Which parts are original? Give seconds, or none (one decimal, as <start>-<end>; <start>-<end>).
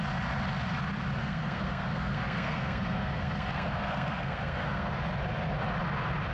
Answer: 0.0-1.2; 5.0-6.3